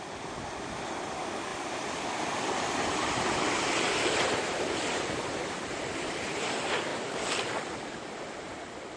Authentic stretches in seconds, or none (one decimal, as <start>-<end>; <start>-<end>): 0.0-1.5; 6.4-6.9; 7.8-9.0